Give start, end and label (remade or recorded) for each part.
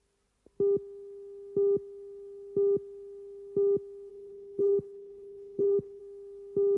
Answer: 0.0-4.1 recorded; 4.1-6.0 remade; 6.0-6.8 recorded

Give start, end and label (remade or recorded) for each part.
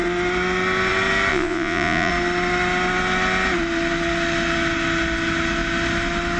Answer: 0.0-1.3 recorded; 1.3-2.1 remade; 2.1-6.4 recorded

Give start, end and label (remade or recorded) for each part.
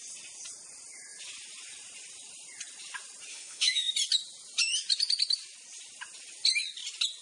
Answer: 0.0-3.3 recorded; 3.3-3.9 remade; 3.9-7.2 recorded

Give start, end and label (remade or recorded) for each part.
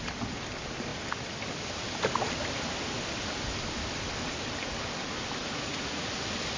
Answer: 0.0-5.4 recorded; 5.4-6.1 remade; 6.1-6.6 recorded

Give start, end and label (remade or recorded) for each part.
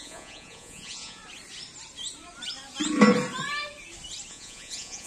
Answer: 0.0-1.2 remade; 1.2-4.3 recorded; 4.3-5.1 remade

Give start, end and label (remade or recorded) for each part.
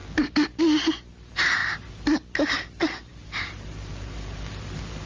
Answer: 0.0-5.1 recorded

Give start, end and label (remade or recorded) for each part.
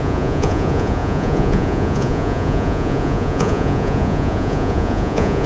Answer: 0.0-5.5 remade